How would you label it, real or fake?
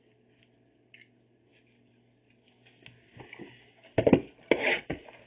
real